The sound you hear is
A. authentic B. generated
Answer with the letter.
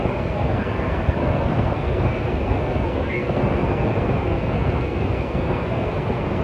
B